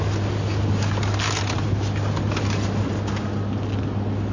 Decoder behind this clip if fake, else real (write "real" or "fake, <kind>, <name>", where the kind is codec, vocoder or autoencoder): real